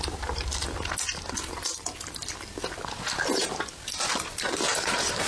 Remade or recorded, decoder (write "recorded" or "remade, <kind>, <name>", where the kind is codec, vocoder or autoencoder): recorded